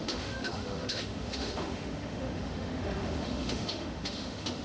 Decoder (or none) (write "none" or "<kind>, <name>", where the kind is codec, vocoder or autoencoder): autoencoder, DAC-VAE